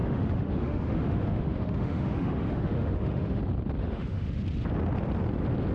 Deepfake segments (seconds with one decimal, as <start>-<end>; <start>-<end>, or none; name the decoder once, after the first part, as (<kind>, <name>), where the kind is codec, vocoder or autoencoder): 0.0-3.4 (autoencoder, DAC-VAE); 3.8-4.4